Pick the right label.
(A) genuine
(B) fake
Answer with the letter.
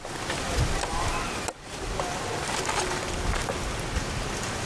A